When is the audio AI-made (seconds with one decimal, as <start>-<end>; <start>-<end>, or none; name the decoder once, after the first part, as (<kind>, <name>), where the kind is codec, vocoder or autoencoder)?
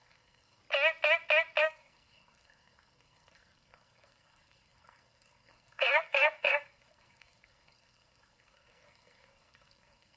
0.0-0.6 (codec, SNAC); 1.6-10.2